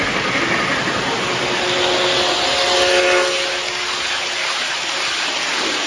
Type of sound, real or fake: real